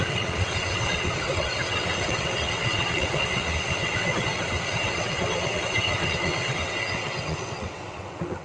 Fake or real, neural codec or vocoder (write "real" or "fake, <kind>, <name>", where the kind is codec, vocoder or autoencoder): fake, vocoder, WaveNeXt